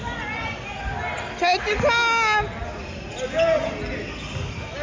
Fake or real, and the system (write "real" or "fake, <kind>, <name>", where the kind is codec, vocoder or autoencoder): real